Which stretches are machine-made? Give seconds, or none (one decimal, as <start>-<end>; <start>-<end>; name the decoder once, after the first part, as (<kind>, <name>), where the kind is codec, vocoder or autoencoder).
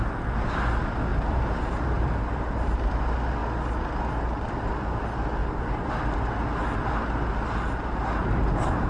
1.1-2.5 (vocoder, BigVGAN v2); 5.4-5.9